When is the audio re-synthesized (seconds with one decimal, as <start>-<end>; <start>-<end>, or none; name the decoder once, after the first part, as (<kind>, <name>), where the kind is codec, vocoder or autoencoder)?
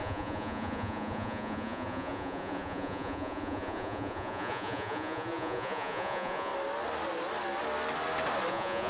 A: 0.0-6.5 (vocoder, Vocos); 8.5-8.9